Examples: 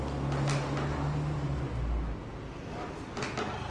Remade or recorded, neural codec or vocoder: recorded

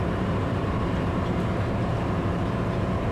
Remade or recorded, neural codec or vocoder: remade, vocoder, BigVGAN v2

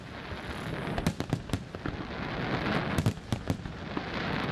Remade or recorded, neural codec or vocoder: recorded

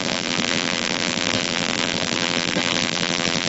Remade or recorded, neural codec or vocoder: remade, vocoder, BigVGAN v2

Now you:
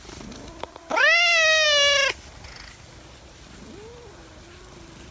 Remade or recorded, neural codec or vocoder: recorded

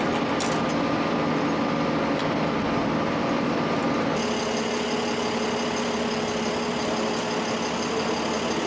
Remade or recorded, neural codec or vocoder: recorded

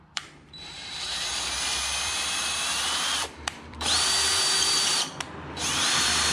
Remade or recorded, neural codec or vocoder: remade, vocoder, BigVGAN v2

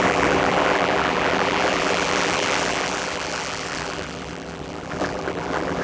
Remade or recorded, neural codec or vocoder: remade, vocoder, BigVGAN v2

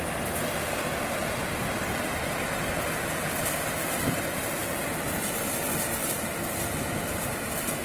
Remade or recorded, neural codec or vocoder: recorded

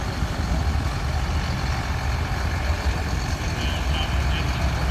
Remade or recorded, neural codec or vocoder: recorded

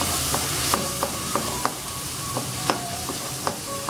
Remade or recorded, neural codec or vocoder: remade, vocoder, BigVGAN v2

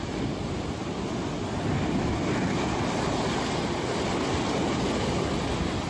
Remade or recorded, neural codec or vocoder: recorded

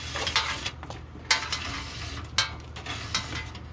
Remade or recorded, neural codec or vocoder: recorded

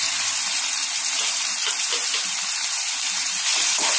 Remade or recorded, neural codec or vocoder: remade, vocoder, BigVGAN v2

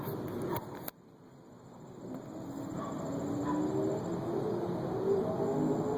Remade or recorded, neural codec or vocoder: recorded